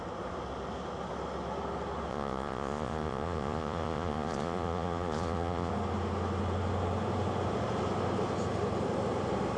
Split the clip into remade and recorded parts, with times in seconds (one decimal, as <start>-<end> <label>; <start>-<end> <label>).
0.0-2.1 recorded; 2.1-5.7 remade; 5.7-9.6 recorded